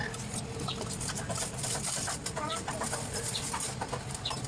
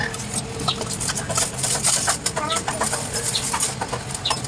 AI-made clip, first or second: first